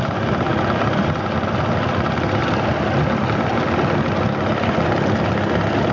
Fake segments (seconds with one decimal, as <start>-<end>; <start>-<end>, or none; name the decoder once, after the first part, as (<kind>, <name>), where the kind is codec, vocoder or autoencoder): none